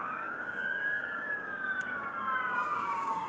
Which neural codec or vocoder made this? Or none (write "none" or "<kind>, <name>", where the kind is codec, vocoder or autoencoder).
codec, DAC